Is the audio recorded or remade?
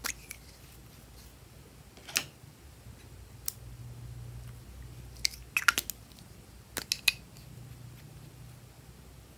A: recorded